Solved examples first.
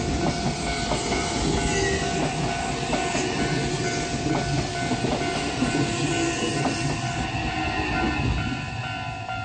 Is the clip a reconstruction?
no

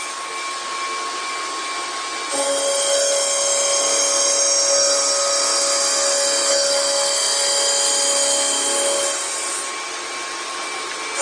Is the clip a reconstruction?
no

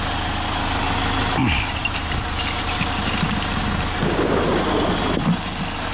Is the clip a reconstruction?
no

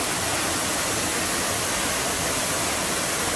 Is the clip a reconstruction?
no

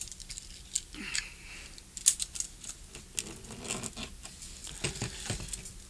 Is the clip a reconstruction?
no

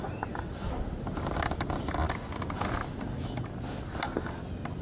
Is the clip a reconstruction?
no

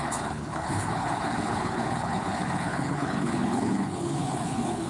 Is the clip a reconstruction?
yes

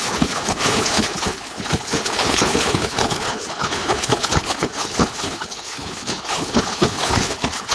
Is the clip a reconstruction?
yes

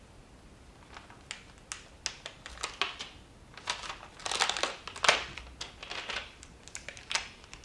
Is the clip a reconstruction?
no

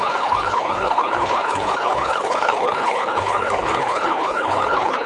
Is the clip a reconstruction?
yes